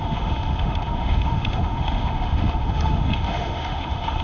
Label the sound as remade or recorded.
remade